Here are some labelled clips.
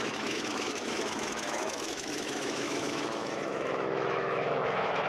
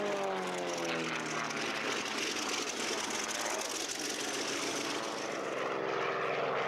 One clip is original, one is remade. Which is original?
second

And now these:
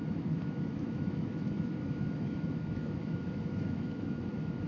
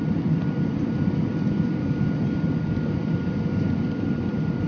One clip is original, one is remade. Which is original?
second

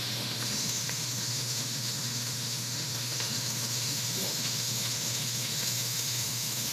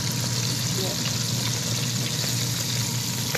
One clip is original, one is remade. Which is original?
second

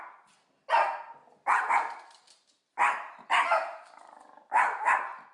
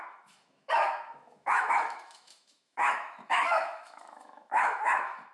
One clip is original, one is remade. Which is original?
first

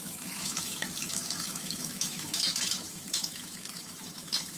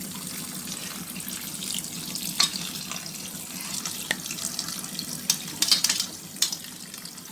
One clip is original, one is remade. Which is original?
second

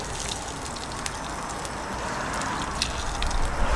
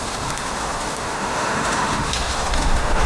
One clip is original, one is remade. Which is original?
first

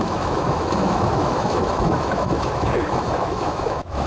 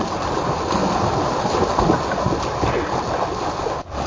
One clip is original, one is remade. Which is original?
second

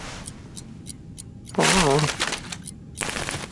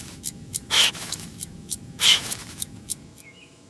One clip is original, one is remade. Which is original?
first